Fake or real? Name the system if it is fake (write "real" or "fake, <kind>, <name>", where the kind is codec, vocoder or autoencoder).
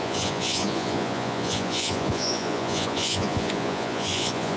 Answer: fake, vocoder, Vocos